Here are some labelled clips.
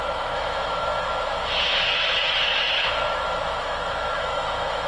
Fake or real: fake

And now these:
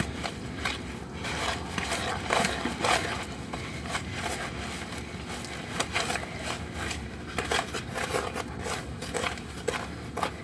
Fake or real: real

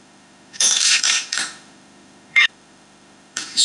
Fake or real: fake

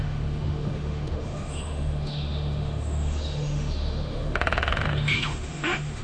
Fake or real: fake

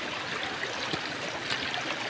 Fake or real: real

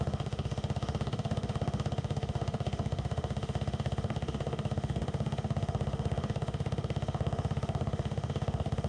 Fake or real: fake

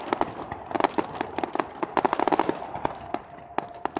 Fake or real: real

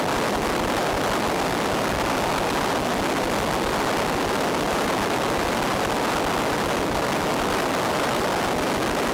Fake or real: real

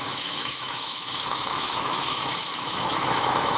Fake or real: fake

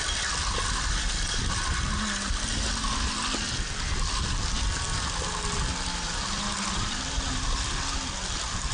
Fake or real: real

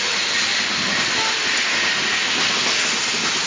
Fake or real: real